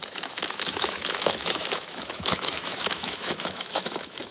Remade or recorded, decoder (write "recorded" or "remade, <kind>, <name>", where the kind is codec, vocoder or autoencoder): remade, autoencoder, DAC-VAE